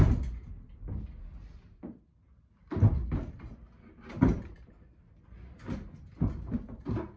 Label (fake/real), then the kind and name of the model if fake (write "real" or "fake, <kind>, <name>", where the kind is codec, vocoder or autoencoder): real